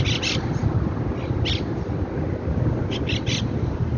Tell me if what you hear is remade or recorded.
recorded